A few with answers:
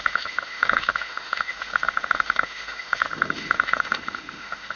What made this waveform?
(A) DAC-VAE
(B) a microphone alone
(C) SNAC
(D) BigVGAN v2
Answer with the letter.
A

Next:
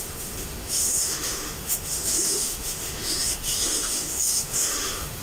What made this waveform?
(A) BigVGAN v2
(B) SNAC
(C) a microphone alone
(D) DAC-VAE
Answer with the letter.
D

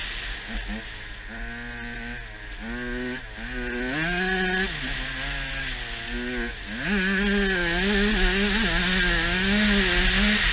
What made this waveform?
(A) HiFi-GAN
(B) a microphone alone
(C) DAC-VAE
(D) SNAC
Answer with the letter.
B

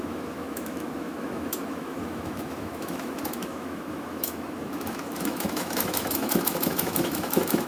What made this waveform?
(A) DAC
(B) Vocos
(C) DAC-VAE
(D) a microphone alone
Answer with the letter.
C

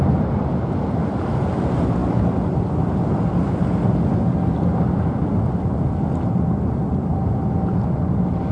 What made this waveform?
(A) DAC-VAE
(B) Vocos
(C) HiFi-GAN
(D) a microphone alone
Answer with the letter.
D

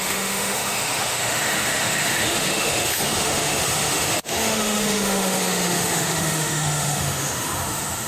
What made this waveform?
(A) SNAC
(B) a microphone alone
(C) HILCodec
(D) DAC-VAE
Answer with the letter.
D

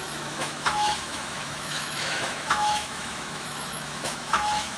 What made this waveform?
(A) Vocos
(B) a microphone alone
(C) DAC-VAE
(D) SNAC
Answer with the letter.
C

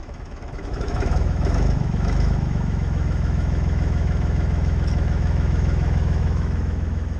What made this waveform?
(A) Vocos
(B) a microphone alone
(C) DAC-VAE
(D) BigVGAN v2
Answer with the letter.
C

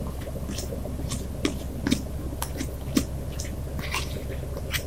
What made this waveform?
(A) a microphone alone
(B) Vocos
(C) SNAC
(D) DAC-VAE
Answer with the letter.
A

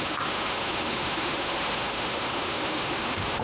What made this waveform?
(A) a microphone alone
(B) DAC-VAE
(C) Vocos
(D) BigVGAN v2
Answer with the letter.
B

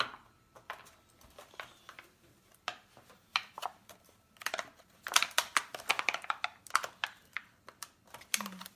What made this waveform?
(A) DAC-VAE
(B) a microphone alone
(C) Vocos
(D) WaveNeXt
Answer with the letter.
B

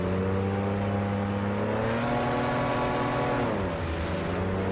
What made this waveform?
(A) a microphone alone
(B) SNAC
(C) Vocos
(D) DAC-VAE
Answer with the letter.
A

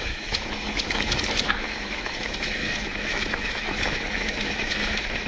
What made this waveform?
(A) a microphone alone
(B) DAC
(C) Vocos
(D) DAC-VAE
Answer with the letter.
D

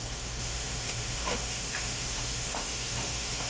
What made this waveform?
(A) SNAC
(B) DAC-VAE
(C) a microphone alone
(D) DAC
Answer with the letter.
B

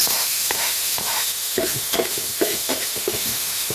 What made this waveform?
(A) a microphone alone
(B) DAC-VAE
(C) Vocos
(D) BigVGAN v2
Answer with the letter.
B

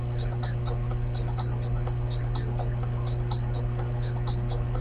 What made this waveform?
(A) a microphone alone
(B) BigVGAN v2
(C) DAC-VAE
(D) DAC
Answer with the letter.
A